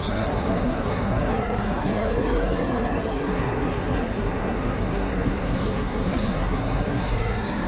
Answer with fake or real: fake